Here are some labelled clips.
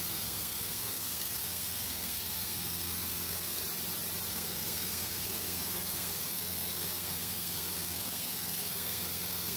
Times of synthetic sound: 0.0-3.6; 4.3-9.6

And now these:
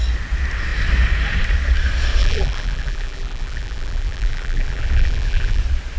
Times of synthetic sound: 2.2-5.6